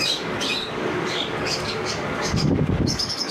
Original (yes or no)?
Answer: no